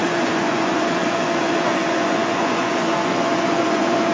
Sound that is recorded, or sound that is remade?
remade